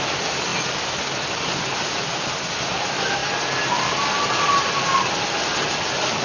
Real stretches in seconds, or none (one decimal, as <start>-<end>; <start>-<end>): 0.0-6.2